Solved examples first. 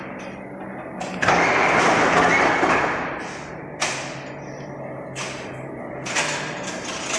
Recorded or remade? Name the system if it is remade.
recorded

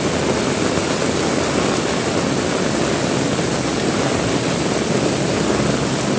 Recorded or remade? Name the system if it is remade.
recorded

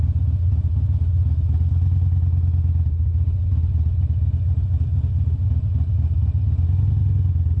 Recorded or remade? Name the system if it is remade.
recorded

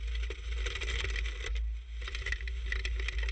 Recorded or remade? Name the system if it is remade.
recorded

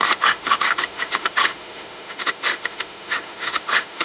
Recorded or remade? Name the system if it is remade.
remade, autoencoder, DAC-VAE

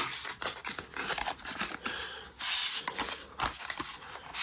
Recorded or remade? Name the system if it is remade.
recorded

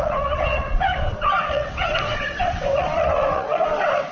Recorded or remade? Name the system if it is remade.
remade, vocoder, WaveNeXt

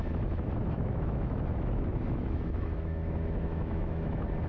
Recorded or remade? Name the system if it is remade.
remade, autoencoder, DAC-VAE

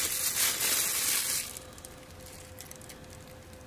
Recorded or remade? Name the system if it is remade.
recorded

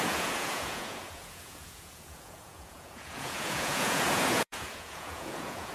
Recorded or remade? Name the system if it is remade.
remade, vocoder, Vocos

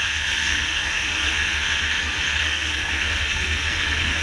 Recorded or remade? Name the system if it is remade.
remade, codec, SNAC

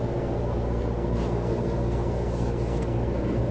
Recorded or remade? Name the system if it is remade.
remade, codec, SNAC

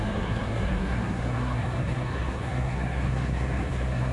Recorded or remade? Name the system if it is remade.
remade, codec, SNAC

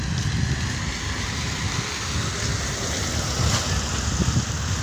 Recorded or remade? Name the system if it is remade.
recorded